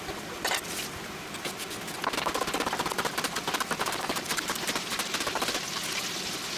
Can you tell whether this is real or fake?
real